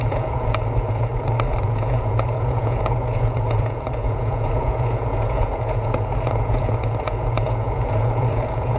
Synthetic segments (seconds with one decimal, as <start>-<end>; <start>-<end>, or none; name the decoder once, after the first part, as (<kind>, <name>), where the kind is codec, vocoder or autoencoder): 0.0-1.1 (vocoder, Vocos); 1.6-8.8